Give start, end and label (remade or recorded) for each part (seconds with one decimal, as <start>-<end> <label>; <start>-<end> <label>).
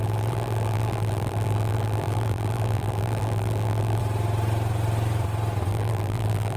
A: 0.0-4.0 remade; 4.0-5.7 recorded; 5.7-6.6 remade